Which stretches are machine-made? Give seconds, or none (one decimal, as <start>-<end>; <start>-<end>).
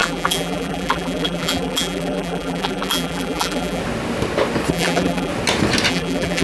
0.0-3.8; 4.7-5.3; 5.9-6.4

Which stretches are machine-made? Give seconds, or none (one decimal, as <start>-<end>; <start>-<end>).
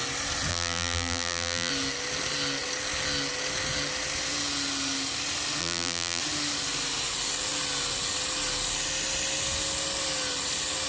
0.5-1.7; 5.6-6.2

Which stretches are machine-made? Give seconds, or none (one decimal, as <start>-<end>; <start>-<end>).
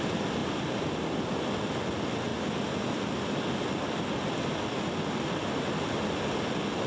2.3-5.8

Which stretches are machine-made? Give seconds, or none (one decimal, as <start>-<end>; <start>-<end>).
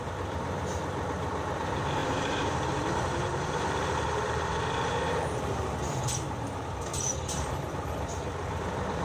0.0-9.0